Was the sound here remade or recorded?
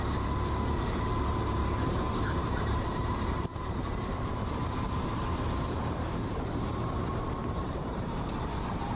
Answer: remade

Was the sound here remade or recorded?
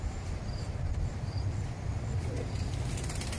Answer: recorded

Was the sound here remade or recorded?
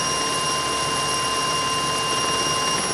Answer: recorded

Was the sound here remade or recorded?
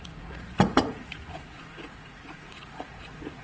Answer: remade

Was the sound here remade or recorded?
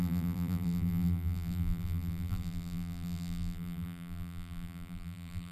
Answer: remade